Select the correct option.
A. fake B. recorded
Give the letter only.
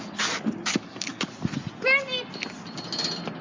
B